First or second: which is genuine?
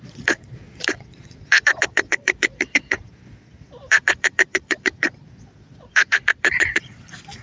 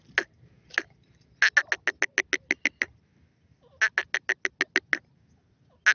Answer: second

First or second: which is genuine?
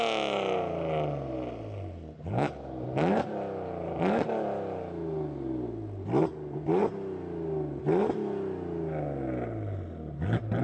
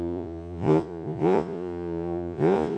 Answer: first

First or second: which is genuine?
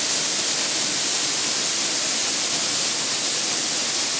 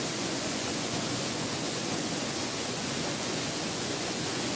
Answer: first